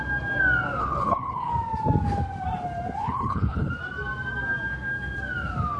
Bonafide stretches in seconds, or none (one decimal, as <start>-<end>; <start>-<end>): 0.0-0.8; 1.5-3.0; 3.7-5.8